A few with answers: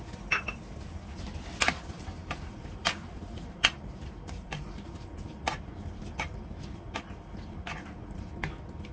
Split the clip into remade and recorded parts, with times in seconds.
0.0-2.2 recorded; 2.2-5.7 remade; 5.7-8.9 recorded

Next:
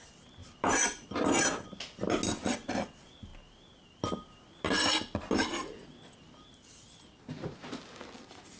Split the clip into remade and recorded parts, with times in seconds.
0.0-0.4 recorded; 0.4-1.1 remade; 1.1-8.6 recorded

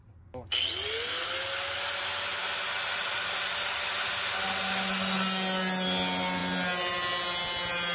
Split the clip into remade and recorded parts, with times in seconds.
0.0-7.9 recorded

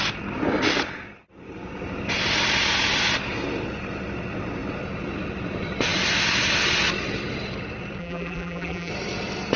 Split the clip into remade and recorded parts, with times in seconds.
0.0-8.0 recorded; 8.0-8.9 remade; 8.9-9.6 recorded

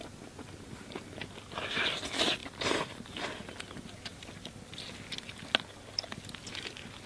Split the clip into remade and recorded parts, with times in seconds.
0.0-2.4 recorded; 2.4-3.5 remade; 3.5-7.1 recorded

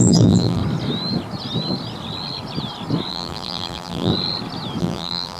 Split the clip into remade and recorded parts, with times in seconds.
0.0-0.6 remade; 0.6-3.1 recorded; 3.1-4.1 remade; 4.1-4.8 recorded; 4.8-5.4 remade